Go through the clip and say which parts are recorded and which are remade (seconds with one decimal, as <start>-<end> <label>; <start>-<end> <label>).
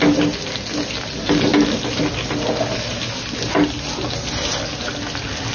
0.0-5.5 recorded